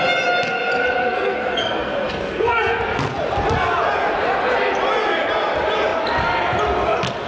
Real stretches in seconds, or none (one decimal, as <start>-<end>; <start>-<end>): 0.0-1.0; 2.8-7.3